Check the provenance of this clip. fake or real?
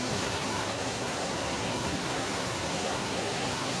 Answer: fake